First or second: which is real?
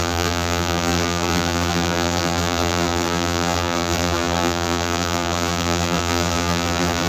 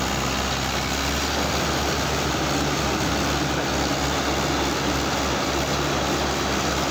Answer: second